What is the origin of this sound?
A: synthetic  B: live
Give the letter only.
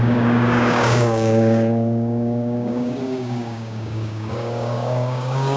A